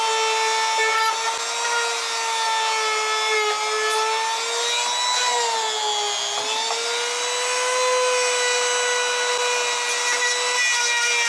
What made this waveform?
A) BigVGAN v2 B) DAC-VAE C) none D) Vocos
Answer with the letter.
C